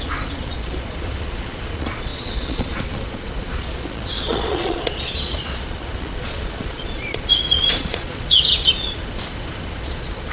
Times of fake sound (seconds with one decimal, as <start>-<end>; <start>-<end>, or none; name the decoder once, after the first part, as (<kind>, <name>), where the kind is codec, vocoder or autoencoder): 0.0-9.0 (vocoder, Vocos); 9.8-10.3